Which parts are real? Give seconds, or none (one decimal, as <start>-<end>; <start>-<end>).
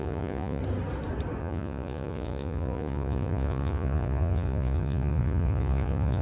0.6-1.4